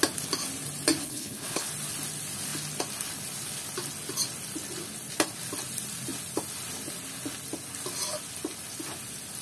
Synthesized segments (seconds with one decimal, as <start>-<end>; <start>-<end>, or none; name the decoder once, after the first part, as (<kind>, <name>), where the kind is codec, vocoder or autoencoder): 1.0-1.7 (codec, HILCodec)